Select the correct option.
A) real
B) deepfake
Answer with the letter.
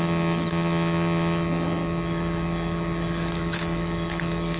A